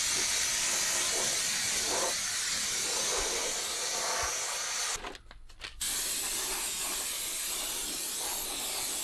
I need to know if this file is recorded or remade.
recorded